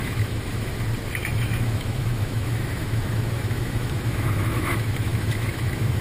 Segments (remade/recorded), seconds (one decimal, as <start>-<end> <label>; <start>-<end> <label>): 0.0-0.7 remade; 0.7-1.2 recorded; 1.2-6.0 remade